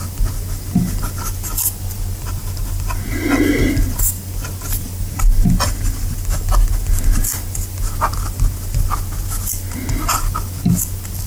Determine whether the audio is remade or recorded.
recorded